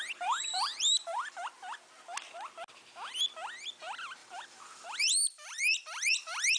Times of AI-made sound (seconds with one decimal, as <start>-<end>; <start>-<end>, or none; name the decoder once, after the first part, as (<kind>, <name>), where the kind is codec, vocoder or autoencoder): 0.7-1.5 (vocoder, BigVGAN v2); 4.2-6.6